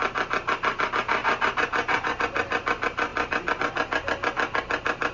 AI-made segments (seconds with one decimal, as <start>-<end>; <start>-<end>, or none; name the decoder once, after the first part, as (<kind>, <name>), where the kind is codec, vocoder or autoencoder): none